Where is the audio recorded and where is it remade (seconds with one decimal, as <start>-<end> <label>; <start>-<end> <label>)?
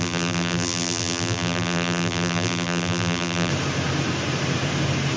0.0-3.5 remade; 3.5-5.2 recorded